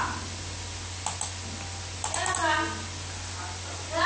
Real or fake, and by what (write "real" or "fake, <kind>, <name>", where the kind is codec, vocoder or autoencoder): real